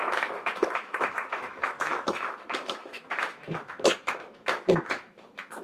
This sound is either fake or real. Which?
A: fake